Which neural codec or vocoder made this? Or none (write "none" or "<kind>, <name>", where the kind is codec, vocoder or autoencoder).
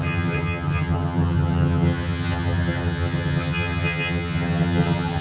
vocoder, HiFi-GAN